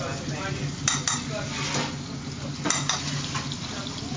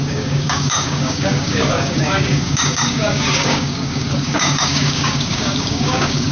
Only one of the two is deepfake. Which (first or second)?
second